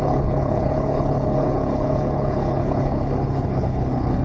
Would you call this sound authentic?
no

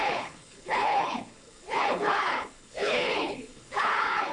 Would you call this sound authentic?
no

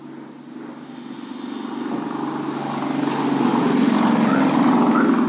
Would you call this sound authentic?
yes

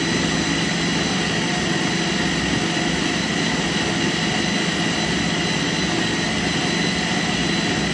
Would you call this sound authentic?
yes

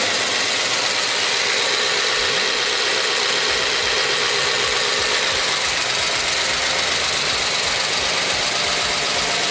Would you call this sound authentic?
yes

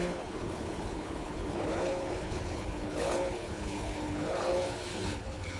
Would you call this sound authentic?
no